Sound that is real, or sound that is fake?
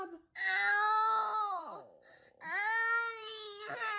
real